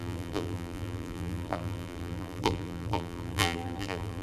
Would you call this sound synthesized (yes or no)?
yes